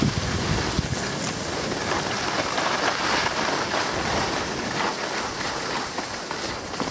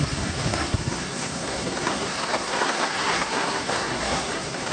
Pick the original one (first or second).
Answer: first